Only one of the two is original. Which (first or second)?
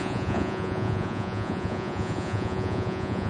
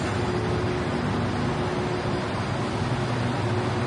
second